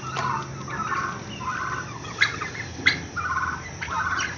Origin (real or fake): real